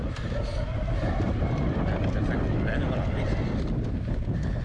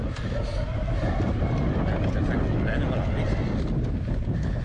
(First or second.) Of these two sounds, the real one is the second